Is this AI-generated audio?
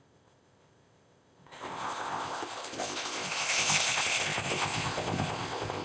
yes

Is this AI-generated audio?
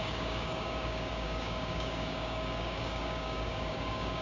yes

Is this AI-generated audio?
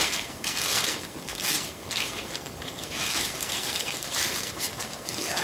yes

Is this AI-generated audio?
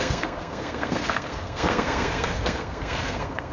yes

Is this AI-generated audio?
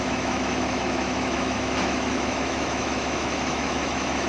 yes